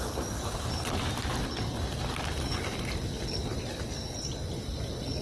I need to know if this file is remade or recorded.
recorded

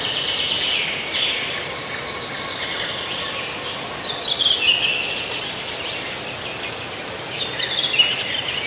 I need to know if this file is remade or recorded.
recorded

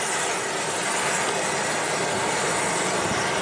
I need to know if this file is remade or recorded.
recorded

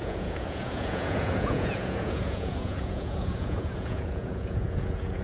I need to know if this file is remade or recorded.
remade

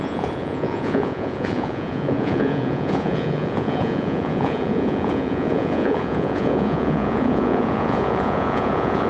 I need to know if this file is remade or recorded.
remade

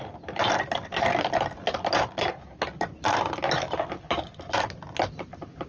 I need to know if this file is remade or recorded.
recorded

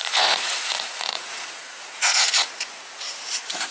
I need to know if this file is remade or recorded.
remade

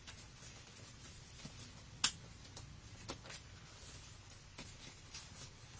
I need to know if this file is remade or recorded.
recorded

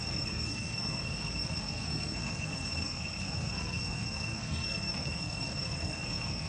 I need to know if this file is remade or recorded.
remade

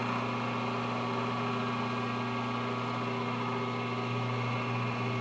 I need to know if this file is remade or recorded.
recorded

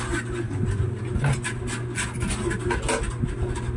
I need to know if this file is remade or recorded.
recorded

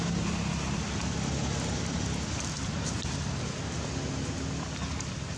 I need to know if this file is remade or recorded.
recorded